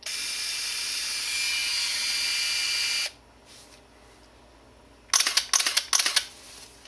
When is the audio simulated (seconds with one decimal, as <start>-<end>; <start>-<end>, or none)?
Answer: none